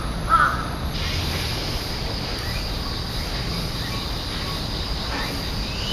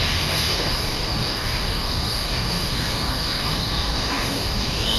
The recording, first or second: first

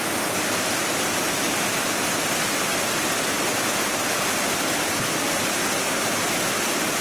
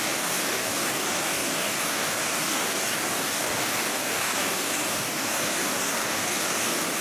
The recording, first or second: first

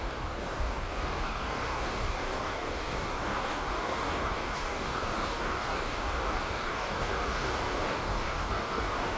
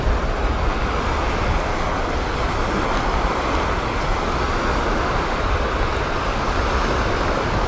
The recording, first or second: second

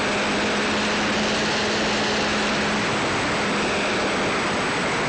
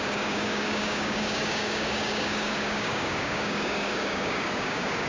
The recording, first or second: first